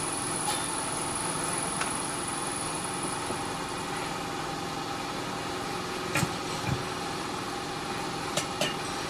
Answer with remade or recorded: recorded